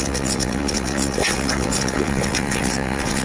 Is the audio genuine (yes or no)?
no